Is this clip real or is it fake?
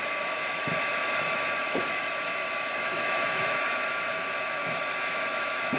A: fake